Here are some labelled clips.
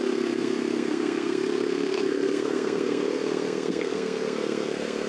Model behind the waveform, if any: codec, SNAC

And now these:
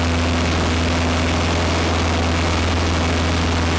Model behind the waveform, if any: none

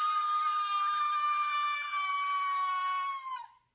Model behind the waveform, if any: none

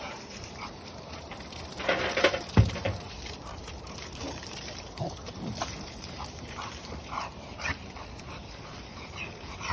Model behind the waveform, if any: vocoder, BigVGAN v2